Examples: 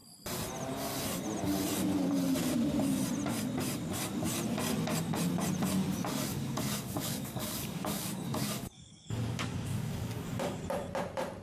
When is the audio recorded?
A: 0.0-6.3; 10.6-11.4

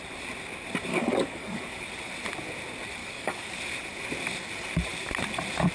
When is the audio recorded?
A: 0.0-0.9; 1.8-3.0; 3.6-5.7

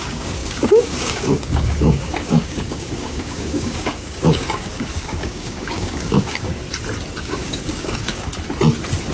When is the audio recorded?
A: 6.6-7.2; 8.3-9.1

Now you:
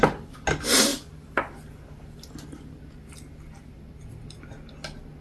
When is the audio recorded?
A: 0.0-5.2

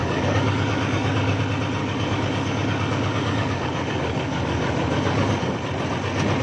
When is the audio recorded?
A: 1.4-1.8; 5.6-6.4